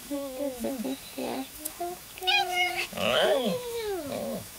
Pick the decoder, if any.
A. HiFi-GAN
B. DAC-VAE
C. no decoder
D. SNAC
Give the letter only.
B